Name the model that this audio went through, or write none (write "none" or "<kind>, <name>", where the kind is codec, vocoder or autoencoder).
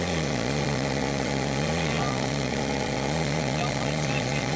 vocoder, Vocos